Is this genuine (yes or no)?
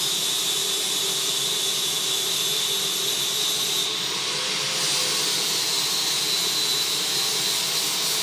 yes